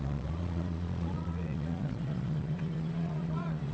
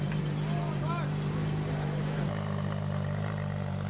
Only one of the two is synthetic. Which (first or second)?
first